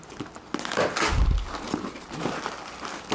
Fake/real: real